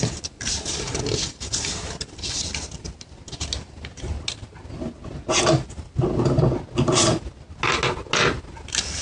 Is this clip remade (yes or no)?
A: no